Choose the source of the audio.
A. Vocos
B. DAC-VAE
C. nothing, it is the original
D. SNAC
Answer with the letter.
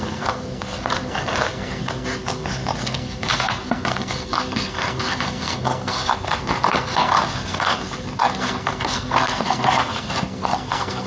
D